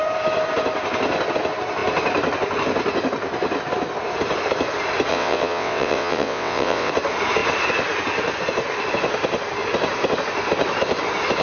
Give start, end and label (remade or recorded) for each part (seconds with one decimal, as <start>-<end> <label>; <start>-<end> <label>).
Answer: 0.0-5.1 recorded; 5.1-6.9 remade; 6.9-11.4 recorded